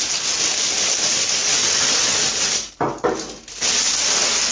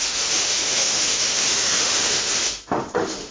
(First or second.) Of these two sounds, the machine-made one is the second